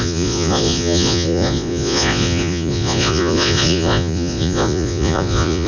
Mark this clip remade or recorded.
remade